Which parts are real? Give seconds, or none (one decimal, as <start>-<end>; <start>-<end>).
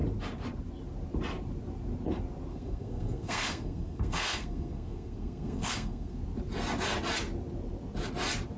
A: 0.0-2.5; 6.2-8.6